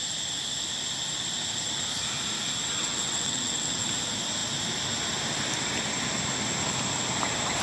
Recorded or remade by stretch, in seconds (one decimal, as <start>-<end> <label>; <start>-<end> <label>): 0.0-2.8 recorded; 2.8-3.8 remade; 3.8-7.6 recorded